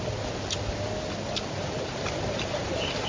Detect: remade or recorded recorded